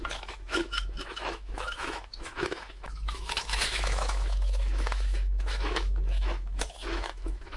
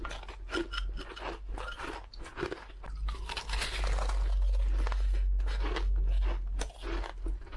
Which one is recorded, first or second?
second